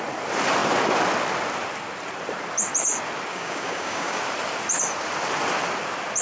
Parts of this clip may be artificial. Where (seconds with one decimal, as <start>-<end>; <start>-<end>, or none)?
3.3-4.2